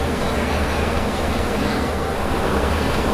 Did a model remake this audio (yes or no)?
yes